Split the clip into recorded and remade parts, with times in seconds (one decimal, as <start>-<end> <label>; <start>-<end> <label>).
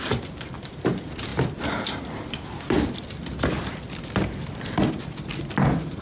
0.0-6.0 recorded